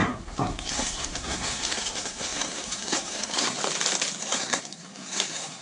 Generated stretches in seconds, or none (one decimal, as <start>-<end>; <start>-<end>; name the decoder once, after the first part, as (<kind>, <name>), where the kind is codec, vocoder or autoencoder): 0.0-3.6 (codec, SNAC); 4.2-5.6